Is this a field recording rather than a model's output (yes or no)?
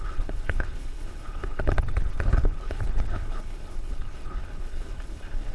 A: no